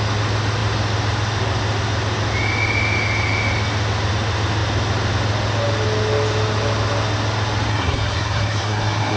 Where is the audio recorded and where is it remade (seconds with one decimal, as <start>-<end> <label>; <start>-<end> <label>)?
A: 0.0-7.7 recorded; 7.7-9.2 remade

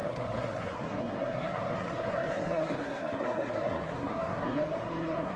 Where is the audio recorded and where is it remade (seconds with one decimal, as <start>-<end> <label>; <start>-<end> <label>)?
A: 0.0-5.4 remade

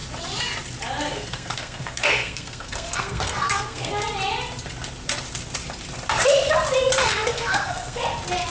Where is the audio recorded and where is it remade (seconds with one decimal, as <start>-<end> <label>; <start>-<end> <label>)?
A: 0.0-1.1 recorded; 1.1-3.9 remade; 3.9-7.0 recorded; 7.0-8.0 remade; 8.0-8.5 recorded